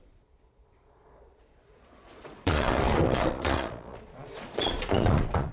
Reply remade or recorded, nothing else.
remade